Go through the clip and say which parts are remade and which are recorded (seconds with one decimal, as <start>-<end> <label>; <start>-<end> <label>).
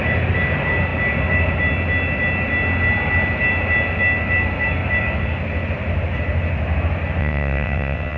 0.0-7.2 recorded; 7.2-8.2 remade